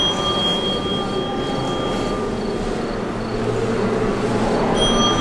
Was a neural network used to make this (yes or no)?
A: no